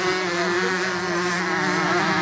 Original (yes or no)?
yes